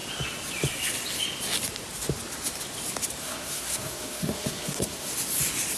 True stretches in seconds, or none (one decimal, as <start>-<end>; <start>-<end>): 0.0-3.2; 5.1-5.8